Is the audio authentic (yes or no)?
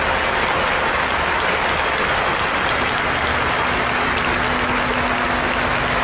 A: yes